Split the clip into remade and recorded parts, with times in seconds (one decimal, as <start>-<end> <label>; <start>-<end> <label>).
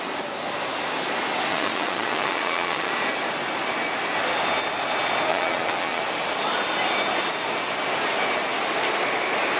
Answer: 0.0-1.5 recorded; 1.5-2.9 remade; 2.9-5.3 recorded; 5.3-6.0 remade; 6.0-9.6 recorded